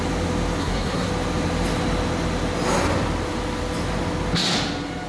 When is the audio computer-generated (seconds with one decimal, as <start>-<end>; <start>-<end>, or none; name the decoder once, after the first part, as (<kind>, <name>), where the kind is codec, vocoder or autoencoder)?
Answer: 0.6-1.1 (codec, SNAC)